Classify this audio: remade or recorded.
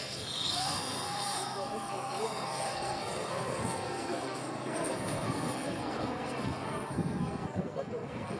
remade